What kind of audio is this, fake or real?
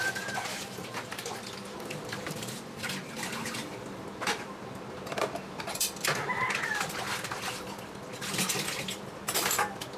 real